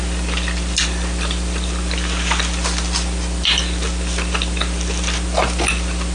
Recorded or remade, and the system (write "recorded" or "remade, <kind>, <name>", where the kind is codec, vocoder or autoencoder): recorded